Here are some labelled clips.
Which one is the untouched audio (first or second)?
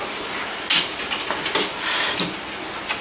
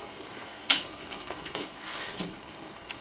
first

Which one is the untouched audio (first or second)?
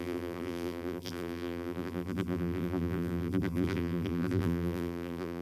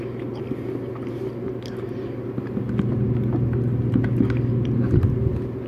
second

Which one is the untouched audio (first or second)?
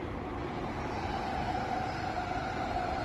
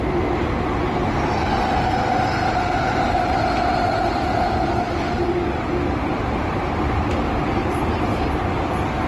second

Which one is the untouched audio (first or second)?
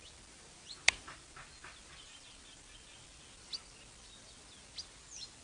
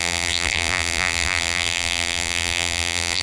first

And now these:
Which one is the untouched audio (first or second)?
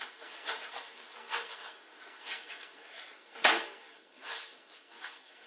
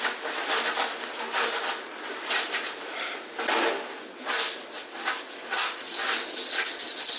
second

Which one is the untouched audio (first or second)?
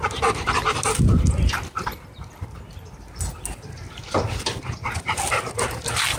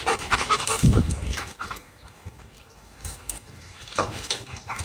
first